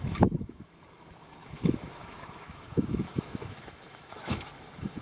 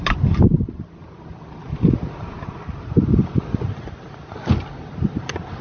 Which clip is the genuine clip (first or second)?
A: second